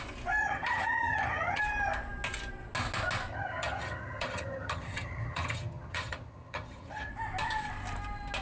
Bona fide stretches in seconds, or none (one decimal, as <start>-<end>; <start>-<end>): 0.0-0.4; 1.6-3.3; 7.1-8.4